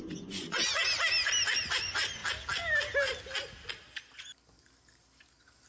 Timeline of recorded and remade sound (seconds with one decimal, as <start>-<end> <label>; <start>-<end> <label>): 0.0-0.7 remade; 0.7-1.6 recorded; 1.6-2.2 remade; 2.2-5.7 recorded